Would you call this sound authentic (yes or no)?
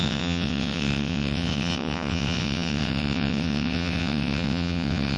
no